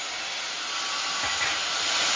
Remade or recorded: recorded